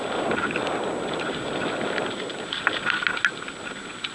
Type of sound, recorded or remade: recorded